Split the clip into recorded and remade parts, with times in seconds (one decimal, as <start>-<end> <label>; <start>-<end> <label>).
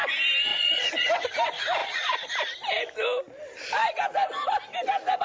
0.0-0.5 recorded; 0.5-1.1 remade; 1.1-1.8 recorded; 1.8-2.3 remade; 2.3-5.2 recorded